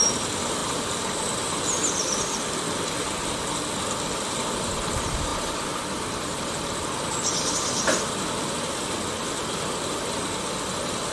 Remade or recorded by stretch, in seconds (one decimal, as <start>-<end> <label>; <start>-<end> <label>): 0.0-11.1 recorded